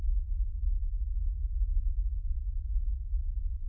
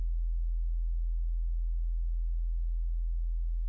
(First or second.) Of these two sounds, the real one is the second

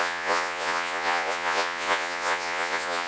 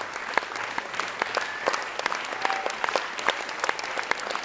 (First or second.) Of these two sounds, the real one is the second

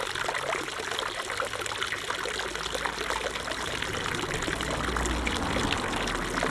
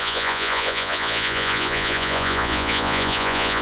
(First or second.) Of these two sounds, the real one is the first